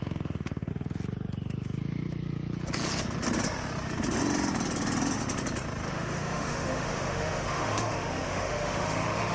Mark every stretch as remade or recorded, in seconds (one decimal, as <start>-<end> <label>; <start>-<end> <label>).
0.0-0.7 remade; 0.7-5.9 recorded; 5.9-9.3 remade